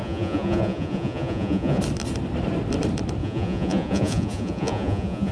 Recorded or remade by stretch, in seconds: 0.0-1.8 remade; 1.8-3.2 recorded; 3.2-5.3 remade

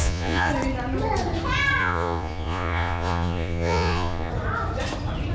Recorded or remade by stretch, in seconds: 0.0-0.5 remade; 0.5-1.8 recorded; 1.8-4.3 remade; 4.3-5.3 recorded

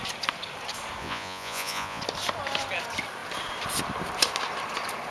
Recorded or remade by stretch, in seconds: 0.0-1.0 recorded; 1.0-2.0 remade; 2.0-5.1 recorded